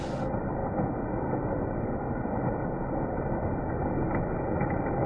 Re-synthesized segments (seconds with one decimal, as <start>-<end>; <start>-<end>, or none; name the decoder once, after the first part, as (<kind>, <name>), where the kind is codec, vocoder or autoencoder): none